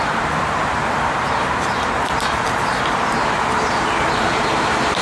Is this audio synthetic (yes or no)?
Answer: yes